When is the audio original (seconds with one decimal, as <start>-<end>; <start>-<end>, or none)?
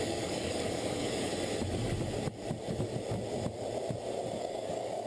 1.3-4.4